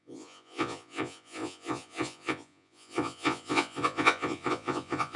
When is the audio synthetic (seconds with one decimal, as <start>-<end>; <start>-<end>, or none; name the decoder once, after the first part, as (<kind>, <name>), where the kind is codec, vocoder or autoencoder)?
0.0-5.2 (vocoder, Vocos)